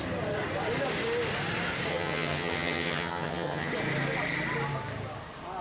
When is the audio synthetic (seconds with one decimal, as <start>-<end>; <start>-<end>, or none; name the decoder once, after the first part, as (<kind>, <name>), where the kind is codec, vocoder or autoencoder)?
1.9-3.7 (vocoder, HiFi-GAN)

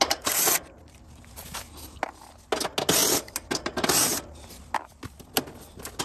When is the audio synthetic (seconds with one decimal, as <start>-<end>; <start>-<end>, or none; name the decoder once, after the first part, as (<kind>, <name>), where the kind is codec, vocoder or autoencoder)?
none

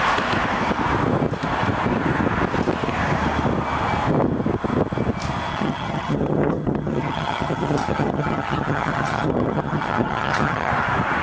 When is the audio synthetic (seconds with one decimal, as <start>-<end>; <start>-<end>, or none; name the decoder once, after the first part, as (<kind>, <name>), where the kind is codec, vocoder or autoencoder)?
5.5-10.7 (vocoder, HiFi-GAN)

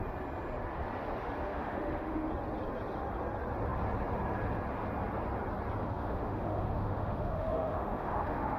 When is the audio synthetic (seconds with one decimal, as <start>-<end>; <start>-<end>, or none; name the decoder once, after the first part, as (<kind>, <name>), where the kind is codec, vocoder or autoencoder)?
1.4-2.3 (autoencoder, DAC-VAE); 5.8-8.6

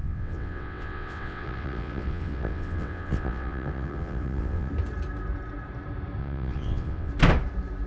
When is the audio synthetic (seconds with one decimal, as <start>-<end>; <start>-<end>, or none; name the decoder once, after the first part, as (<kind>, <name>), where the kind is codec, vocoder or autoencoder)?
0.0-4.7 (vocoder, WaveNeXt); 6.2-7.1

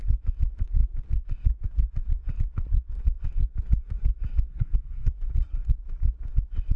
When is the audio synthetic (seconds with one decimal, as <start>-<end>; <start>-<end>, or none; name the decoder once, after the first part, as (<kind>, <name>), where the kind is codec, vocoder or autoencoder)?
4.5-5.1 (codec, SNAC)